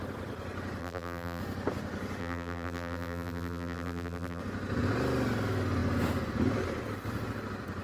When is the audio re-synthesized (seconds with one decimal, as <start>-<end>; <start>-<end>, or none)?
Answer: 0.8-1.4; 2.2-4.4